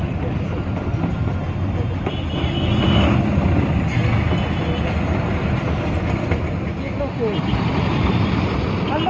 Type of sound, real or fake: real